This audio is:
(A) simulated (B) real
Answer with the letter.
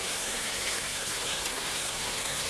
A